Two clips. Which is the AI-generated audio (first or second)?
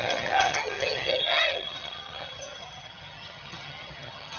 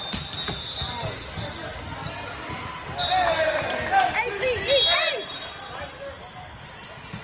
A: first